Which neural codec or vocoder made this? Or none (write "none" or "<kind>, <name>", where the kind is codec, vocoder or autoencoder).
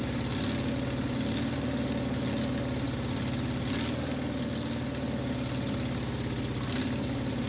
none